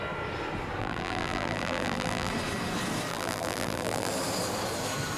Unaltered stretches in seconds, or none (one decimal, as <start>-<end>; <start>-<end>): 0.0-0.8; 2.3-3.1; 4.1-5.2

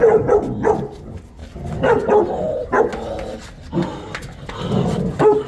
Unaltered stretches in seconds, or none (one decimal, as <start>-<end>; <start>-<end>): 0.0-1.4; 2.8-3.9; 4.5-5.5

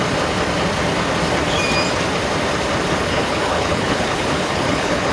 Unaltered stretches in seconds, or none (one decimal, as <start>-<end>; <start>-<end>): 0.0-3.0

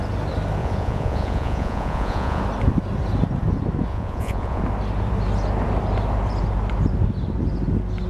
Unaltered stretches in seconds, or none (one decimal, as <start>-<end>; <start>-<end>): 0.0-0.6; 2.4-3.9; 4.6-8.1

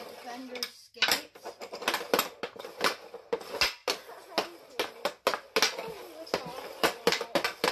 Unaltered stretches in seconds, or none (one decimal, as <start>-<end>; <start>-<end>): 0.0-7.7

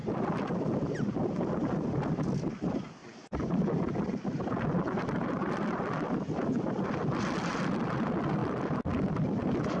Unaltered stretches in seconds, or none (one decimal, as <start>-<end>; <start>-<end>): 0.0-9.8

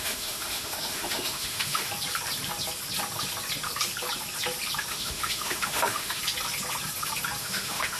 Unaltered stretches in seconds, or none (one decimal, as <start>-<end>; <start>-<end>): 1.9-4.9; 6.2-7.4